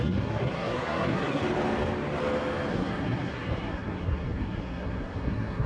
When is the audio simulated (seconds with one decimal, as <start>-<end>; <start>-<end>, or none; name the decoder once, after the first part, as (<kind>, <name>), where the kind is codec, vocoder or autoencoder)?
0.0-1.4 (codec, SNAC); 2.7-5.7